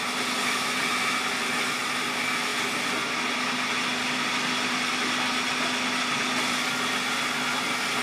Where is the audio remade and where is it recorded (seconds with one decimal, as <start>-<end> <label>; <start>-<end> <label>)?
0.0-8.0 recorded

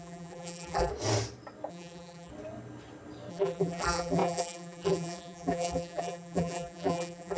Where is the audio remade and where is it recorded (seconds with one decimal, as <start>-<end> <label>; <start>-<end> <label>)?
0.0-0.9 remade; 0.9-1.7 recorded; 1.7-2.3 remade; 2.3-3.3 recorded; 3.3-7.4 remade

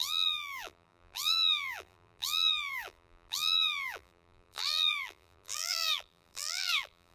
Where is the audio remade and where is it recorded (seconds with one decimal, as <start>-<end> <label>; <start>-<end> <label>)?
0.0-7.1 remade

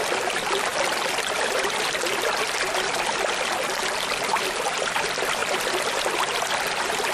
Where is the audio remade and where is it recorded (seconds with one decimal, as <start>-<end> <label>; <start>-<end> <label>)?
0.0-0.7 remade; 0.7-3.8 recorded; 3.8-5.4 remade; 5.4-6.1 recorded; 6.1-7.1 remade